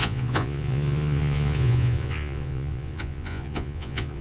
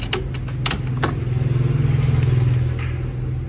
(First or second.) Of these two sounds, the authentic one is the second